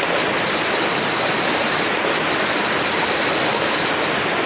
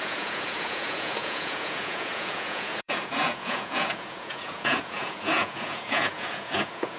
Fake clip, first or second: second